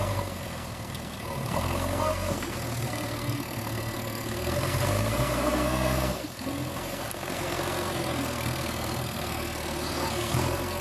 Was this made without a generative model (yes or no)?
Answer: no